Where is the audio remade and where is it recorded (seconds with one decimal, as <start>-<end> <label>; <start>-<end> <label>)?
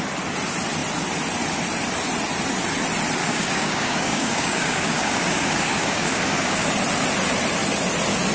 0.0-3.2 recorded; 3.2-6.7 remade; 6.7-8.3 recorded